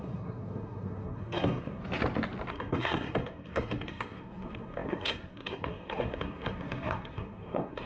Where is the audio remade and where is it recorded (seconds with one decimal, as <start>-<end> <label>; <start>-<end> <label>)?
0.0-1.8 remade; 1.8-2.5 recorded; 2.5-7.9 remade